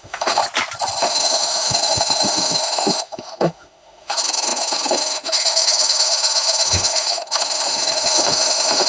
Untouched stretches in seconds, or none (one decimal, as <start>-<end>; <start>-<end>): 0.4-1.0